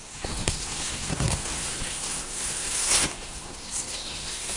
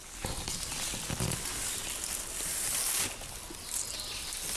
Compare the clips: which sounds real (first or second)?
second